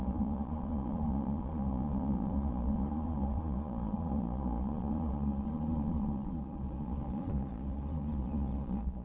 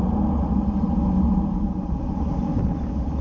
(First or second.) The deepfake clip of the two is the first